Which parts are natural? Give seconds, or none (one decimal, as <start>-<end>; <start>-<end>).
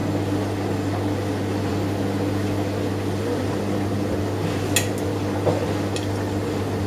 0.0-6.9